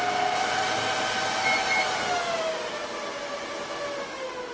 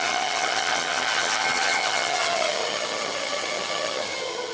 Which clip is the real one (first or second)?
first